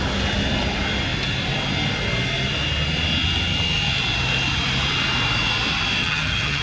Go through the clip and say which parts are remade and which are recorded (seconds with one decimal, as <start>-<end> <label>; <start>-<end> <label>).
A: 0.0-6.0 recorded; 6.0-6.6 remade